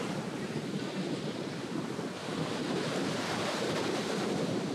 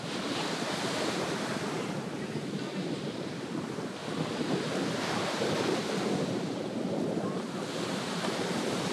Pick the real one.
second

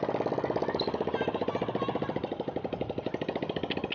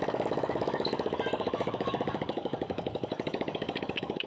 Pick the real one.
first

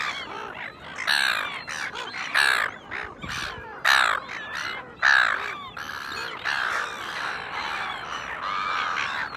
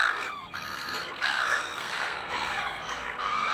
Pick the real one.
first